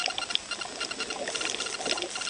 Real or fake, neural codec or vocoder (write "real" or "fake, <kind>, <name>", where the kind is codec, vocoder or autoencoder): real